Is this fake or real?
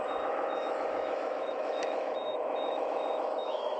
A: fake